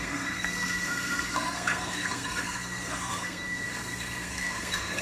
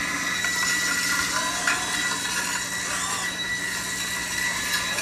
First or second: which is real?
second